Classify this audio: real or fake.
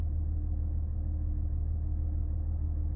real